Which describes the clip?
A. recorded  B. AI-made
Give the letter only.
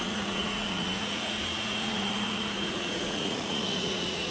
B